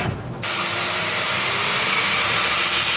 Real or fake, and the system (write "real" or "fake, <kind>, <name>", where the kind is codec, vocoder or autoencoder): real